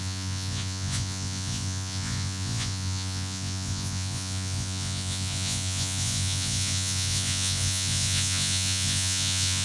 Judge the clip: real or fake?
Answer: fake